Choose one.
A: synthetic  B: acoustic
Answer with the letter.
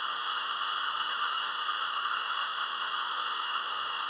A